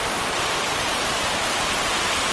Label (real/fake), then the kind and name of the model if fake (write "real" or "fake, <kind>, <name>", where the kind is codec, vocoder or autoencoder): fake, vocoder, BigVGAN v2